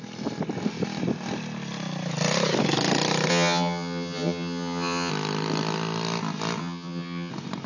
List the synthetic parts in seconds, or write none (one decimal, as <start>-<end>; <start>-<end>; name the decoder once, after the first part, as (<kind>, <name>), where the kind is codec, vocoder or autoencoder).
3.3-5.1 (vocoder, HiFi-GAN); 6.6-7.3